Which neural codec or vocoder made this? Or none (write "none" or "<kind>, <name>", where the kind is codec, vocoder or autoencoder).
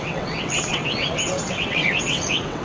vocoder, WaveNeXt